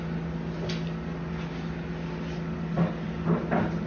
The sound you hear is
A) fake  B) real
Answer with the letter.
B